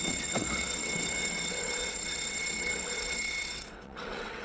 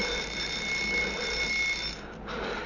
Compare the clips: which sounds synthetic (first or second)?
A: first